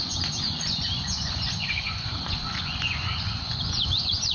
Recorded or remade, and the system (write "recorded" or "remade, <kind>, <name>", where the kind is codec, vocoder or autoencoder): remade, vocoder, Vocos